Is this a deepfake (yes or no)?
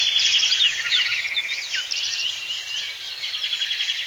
no